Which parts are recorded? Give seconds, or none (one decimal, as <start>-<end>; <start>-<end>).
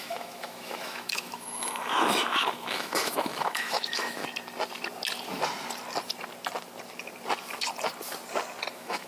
4.2-8.7